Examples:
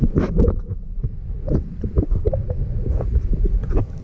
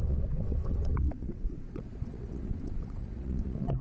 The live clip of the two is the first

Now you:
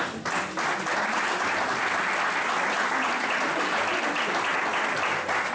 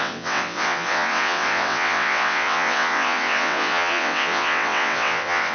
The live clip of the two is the first